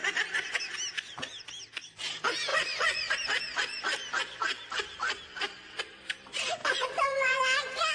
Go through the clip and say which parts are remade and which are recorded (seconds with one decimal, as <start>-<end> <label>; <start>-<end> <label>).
0.0-2.5 recorded; 2.5-3.2 remade; 3.2-6.6 recorded; 6.6-7.4 remade; 7.4-7.9 recorded